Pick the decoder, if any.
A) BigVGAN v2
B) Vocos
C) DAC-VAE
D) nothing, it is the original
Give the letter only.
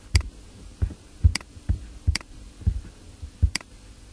A